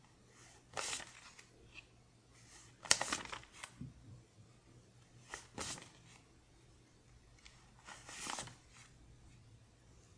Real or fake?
real